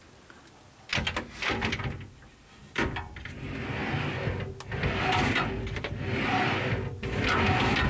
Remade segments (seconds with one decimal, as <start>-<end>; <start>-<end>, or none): none